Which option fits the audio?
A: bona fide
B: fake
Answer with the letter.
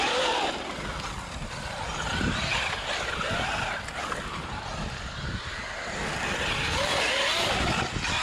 A